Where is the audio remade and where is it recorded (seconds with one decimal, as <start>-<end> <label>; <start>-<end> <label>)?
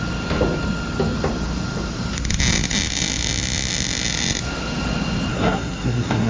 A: 0.0-5.3 recorded; 5.3-6.3 remade